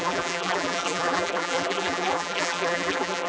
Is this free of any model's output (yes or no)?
no